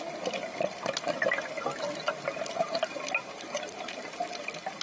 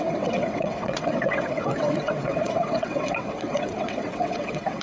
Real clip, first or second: first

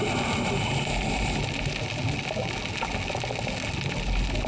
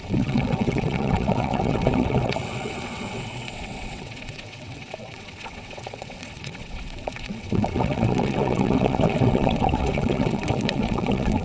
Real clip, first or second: first